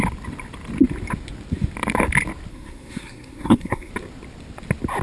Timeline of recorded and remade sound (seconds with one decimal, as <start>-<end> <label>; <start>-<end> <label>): 0.0-2.5 recorded; 2.5-3.9 remade; 3.9-5.0 recorded